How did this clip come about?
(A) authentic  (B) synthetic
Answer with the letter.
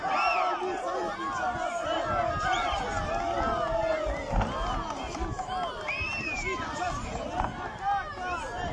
A